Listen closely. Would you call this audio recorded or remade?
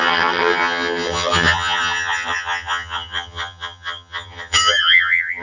remade